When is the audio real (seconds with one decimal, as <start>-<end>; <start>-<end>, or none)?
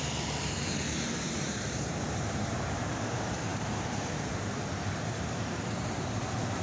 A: none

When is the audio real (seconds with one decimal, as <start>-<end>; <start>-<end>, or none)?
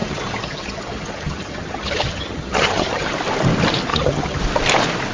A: 3.1-3.9; 4.4-5.1